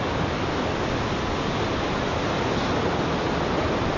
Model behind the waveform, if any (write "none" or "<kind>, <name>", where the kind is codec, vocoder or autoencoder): none